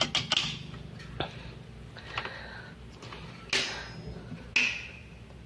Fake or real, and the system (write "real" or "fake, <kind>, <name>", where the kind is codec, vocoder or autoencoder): real